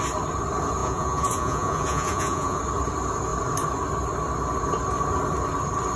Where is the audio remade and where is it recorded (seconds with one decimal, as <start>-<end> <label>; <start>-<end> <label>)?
0.0-0.8 recorded; 0.8-2.6 remade; 2.6-6.0 recorded